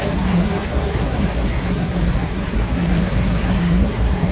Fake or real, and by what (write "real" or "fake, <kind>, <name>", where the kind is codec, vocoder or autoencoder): fake, codec, SNAC